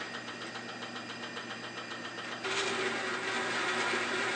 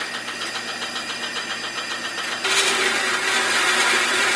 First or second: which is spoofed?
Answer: second